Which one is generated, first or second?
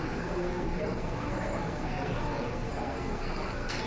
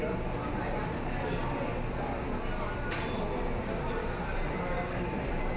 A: first